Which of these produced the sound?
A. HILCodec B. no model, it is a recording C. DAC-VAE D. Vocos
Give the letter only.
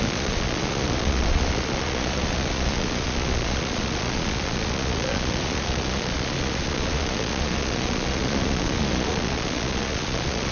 D